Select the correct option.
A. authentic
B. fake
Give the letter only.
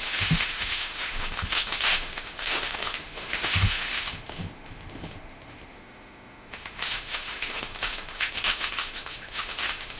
B